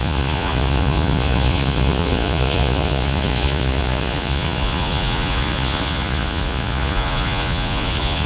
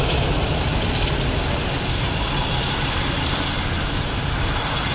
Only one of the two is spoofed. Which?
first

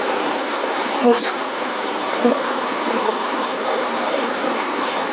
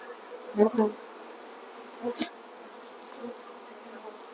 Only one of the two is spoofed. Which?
first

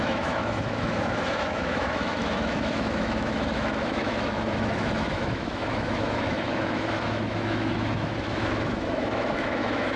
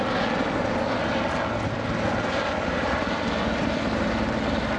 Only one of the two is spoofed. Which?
first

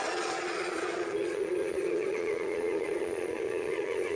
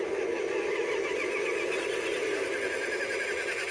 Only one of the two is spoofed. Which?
first